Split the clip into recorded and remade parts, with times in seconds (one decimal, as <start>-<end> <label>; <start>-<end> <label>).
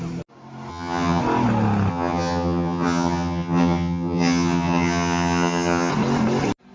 0.0-0.7 recorded; 0.7-1.2 remade; 1.2-1.9 recorded; 1.9-5.9 remade; 5.9-6.7 recorded